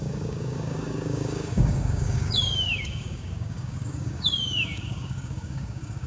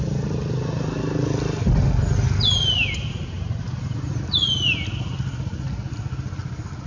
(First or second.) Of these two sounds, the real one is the second